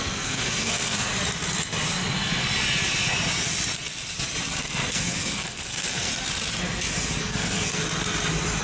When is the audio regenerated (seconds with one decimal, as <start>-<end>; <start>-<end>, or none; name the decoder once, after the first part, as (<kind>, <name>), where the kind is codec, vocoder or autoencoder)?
0.0-1.1 (codec, SNAC); 4.6-6.1; 7.2-7.8